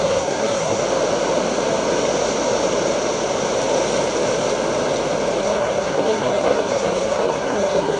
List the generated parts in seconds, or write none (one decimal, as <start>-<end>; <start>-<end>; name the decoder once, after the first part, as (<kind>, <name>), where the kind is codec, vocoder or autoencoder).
0.0-0.8 (codec, SNAC); 5.4-8.0